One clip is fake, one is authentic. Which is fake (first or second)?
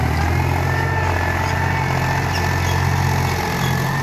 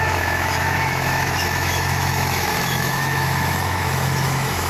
second